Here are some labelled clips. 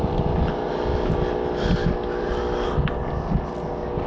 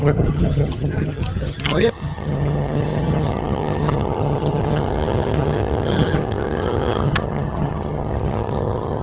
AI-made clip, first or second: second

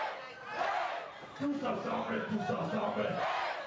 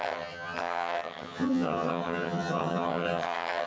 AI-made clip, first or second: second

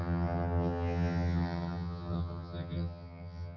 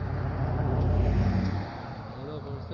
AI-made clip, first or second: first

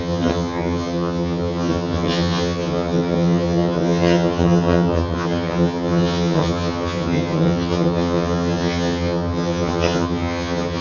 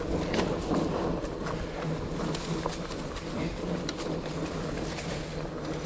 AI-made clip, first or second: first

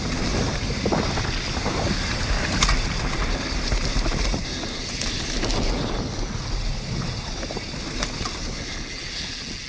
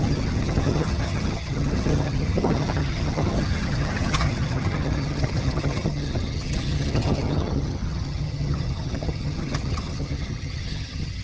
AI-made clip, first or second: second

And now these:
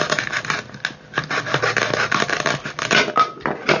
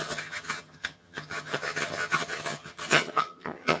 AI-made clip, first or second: second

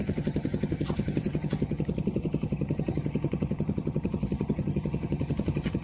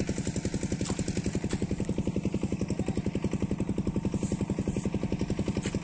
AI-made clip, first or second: first